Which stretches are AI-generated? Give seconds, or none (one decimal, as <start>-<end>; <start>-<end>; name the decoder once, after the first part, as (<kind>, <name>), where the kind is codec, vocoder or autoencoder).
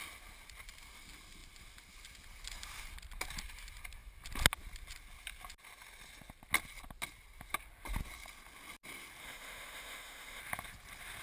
9.2-10.4 (autoencoder, DAC-VAE)